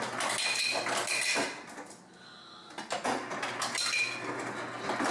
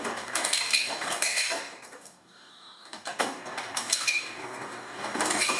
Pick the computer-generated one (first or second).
second